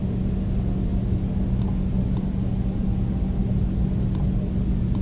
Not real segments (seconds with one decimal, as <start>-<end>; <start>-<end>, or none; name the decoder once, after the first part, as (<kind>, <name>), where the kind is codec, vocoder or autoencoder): none